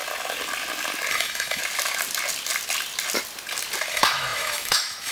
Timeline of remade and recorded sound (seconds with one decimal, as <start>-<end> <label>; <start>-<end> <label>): 0.0-1.1 recorded; 1.1-1.6 remade; 1.6-3.9 recorded; 3.9-5.1 remade